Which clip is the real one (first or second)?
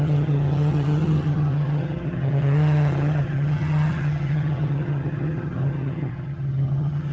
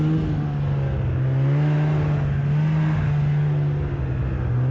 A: second